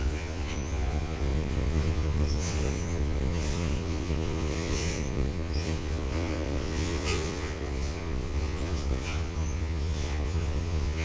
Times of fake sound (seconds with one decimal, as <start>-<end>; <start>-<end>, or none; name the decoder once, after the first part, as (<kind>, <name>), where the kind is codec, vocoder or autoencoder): 0.0-11.0 (vocoder, Vocos)